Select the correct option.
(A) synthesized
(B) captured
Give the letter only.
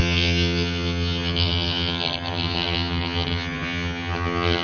A